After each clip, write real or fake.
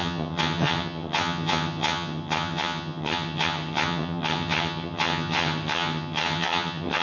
fake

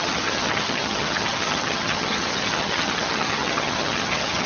fake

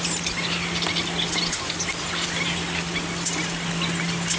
real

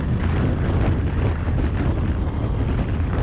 real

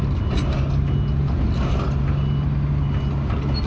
real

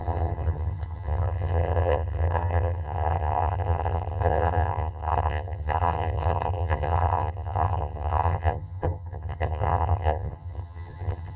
fake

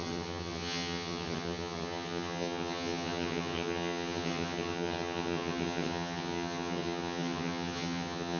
fake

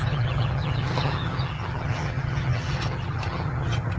fake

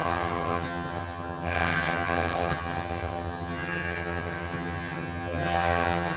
fake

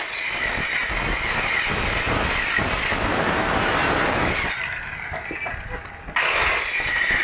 real